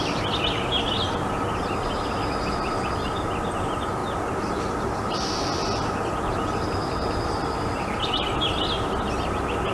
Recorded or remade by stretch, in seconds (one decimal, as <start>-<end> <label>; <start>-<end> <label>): 0.0-9.7 recorded